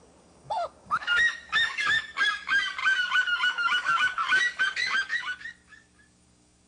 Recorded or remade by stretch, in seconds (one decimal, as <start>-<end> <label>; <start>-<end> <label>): 0.0-6.7 remade

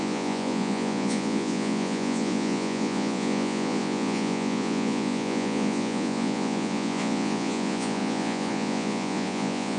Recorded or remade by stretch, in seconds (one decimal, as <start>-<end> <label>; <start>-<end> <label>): 0.0-9.8 remade

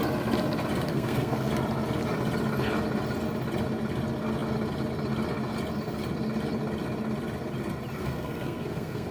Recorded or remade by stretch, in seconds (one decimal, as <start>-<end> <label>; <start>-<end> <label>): 0.0-0.9 recorded; 0.9-1.5 remade; 1.5-8.0 recorded; 8.0-9.1 remade

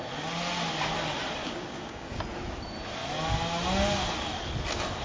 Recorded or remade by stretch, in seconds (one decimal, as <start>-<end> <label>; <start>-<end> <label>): 0.0-1.4 recorded; 1.4-2.2 remade; 2.2-5.0 recorded

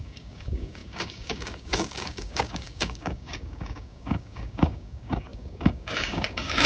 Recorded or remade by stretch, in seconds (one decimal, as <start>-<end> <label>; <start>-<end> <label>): 0.0-6.7 remade

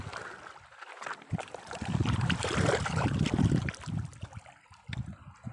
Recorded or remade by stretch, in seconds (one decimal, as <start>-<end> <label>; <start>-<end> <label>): 0.0-0.5 recorded; 0.5-3.8 remade; 3.8-5.5 recorded

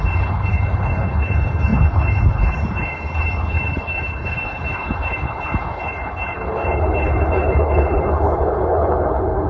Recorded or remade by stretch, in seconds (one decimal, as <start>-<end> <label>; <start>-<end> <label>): 0.0-9.5 remade

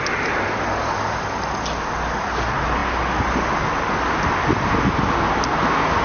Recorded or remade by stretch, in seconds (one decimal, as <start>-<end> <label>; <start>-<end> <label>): 0.0-6.0 recorded